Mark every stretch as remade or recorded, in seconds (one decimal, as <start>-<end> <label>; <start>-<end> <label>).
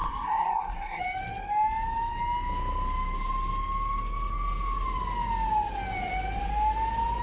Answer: 0.0-1.0 remade; 1.0-7.2 recorded